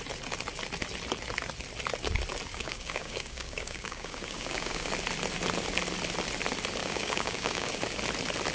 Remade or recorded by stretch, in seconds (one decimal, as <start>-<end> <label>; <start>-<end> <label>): 0.0-2.5 recorded; 2.5-4.9 remade; 4.9-6.8 recorded; 6.8-7.7 remade; 7.7-8.5 recorded